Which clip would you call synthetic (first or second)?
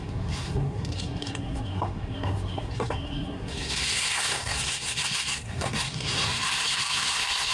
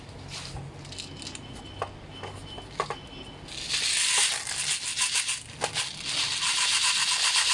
first